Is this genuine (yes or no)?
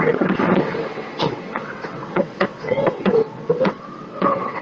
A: no